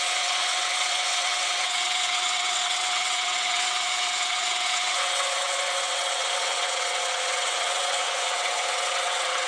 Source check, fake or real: fake